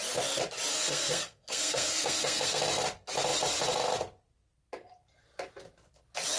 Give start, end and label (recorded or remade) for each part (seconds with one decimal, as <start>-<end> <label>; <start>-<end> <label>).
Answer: 0.0-0.7 recorded; 0.7-2.6 remade; 2.6-6.4 recorded